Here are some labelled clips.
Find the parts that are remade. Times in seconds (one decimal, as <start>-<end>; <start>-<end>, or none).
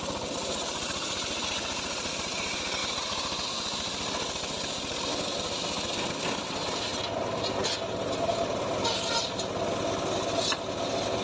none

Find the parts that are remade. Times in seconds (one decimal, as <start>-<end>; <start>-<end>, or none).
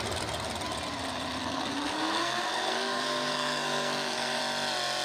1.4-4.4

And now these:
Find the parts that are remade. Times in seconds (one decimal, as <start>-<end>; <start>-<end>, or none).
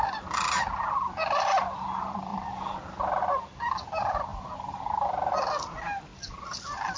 none